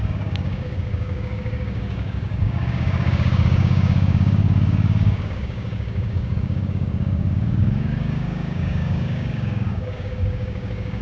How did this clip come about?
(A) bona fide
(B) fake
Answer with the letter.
B